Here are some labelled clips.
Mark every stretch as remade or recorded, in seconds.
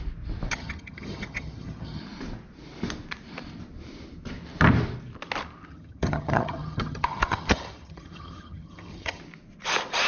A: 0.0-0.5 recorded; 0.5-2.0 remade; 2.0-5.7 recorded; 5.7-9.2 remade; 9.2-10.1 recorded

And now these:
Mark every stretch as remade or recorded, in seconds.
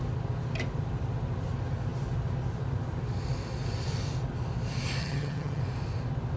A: 0.0-5.0 recorded; 5.0-5.6 remade; 5.6-6.4 recorded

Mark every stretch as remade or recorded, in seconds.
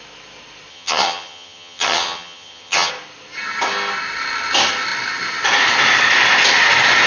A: 0.0-0.7 recorded; 0.7-2.9 remade; 2.9-7.1 recorded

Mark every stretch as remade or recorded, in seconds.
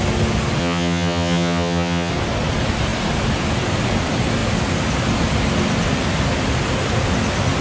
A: 0.0-0.6 recorded; 0.6-2.1 remade; 2.1-7.6 recorded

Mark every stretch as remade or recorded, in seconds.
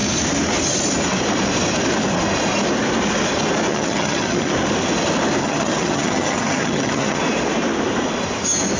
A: 0.0-3.7 recorded; 3.7-4.5 remade; 4.5-5.4 recorded; 5.4-7.2 remade; 7.2-8.8 recorded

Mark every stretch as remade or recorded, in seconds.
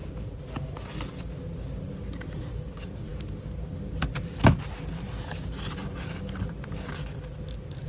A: 0.0-7.9 recorded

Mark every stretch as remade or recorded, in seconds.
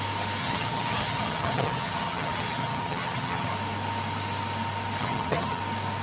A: 0.0-0.4 recorded; 0.4-3.5 remade; 3.5-5.0 recorded; 5.0-5.6 remade; 5.6-6.0 recorded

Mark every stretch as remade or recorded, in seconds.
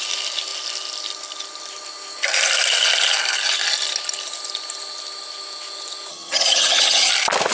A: 0.0-6.1 recorded; 6.1-7.1 remade; 7.1-7.5 recorded